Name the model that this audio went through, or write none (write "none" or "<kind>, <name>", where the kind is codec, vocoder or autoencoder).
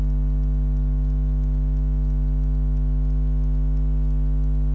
none